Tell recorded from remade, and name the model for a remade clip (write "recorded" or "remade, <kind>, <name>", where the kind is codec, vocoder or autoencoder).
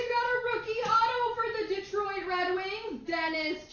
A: remade, vocoder, BigVGAN v2